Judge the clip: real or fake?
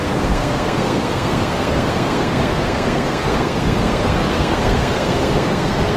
fake